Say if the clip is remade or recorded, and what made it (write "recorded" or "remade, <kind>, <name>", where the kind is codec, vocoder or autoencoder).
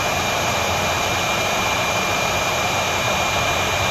remade, vocoder, BigVGAN v2